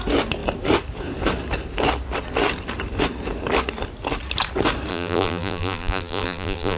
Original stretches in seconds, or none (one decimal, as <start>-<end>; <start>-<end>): 0.0-4.9